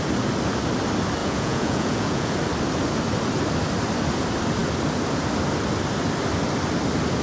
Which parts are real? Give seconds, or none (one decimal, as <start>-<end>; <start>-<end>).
0.0-1.2; 2.3-7.2